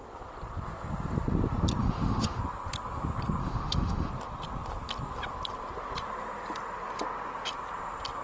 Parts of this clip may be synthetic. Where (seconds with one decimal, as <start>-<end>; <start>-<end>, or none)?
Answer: 1.8-2.4; 3.4-4.1

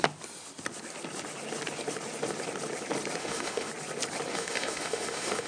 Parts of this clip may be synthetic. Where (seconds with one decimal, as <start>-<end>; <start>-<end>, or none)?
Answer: 3.2-3.7; 4.3-5.5

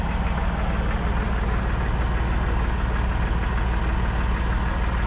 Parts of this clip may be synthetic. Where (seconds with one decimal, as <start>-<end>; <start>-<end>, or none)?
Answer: none

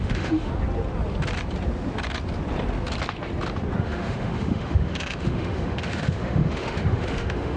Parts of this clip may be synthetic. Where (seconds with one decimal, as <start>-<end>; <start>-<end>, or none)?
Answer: 0.0-0.5; 3.8-7.6

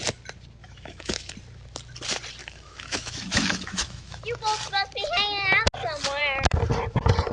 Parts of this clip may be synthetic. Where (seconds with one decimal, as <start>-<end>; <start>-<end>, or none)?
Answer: 0.6-1.3; 2.4-4.2

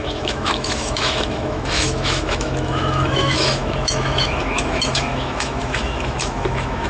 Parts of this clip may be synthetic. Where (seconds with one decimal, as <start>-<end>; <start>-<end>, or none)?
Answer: 0.0-6.9